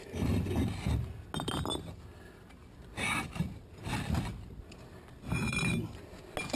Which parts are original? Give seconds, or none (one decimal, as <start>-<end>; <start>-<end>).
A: 0.0-6.5